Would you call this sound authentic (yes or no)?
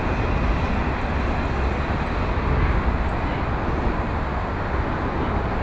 yes